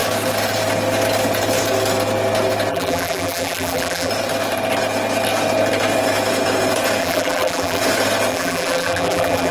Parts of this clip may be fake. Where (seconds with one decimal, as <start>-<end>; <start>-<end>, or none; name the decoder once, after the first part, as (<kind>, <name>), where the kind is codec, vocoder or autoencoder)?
2.7-4.1 (vocoder, BigVGAN v2); 7.0-7.8; 8.3-9.5

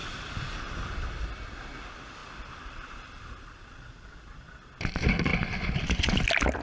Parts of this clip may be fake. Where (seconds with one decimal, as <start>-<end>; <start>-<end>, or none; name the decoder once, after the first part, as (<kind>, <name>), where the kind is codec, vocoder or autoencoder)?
0.0-1.2 (vocoder, BigVGAN v2); 2.2-3.7; 5.3-6.6

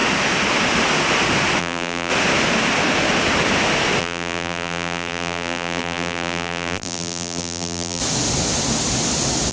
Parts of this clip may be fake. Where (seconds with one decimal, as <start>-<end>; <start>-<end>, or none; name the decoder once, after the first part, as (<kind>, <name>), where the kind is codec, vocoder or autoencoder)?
1.6-2.1 (vocoder, BigVGAN v2); 4.0-8.0